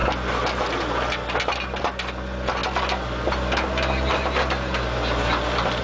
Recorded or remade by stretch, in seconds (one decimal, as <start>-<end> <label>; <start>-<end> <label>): 0.0-5.8 recorded